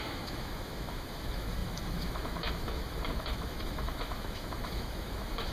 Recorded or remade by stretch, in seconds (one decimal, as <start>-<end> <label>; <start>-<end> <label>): 0.0-5.5 remade